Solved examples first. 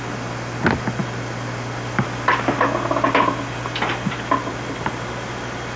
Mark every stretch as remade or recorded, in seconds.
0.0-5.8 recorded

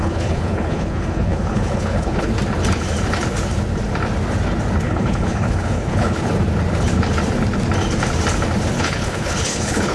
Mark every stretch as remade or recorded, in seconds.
0.0-2.3 remade; 2.3-4.8 recorded; 4.8-6.3 remade; 6.3-8.7 recorded; 8.7-9.9 remade

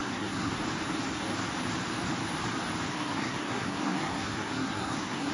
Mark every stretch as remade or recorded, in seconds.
0.0-0.6 remade; 0.6-2.9 recorded; 2.9-5.3 remade

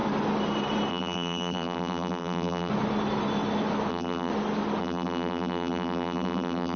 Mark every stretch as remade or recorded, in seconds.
0.0-0.9 recorded; 0.9-2.7 remade; 2.7-3.9 recorded; 3.9-4.3 remade; 4.3-4.8 recorded; 4.8-6.8 remade

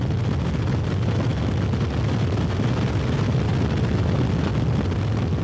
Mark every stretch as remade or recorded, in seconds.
0.0-5.4 recorded

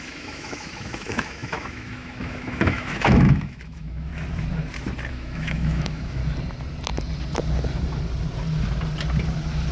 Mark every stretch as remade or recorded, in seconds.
0.0-4.1 remade; 4.1-5.1 recorded; 5.1-6.2 remade; 6.2-9.7 recorded